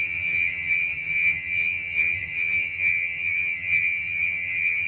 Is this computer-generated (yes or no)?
yes